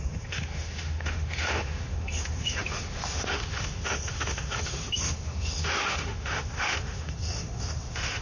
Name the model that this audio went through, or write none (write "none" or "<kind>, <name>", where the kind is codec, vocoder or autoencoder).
autoencoder, DAC-VAE